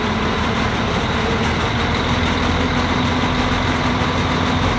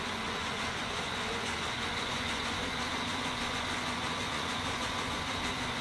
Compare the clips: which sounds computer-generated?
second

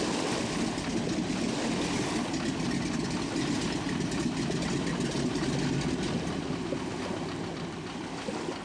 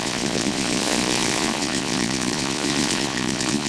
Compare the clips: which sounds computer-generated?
second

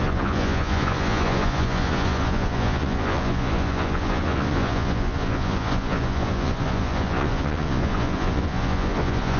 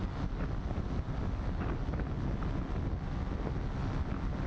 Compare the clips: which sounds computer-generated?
first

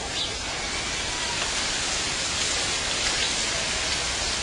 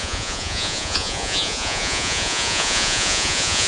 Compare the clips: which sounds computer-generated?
second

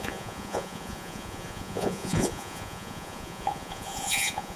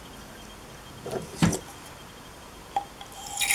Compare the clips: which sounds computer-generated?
first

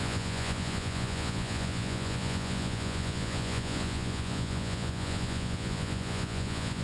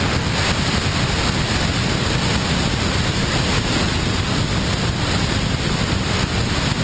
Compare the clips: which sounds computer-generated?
first